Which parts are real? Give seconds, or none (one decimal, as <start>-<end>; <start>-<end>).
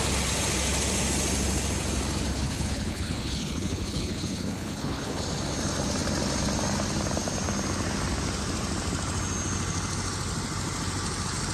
0.0-2.3; 5.2-11.5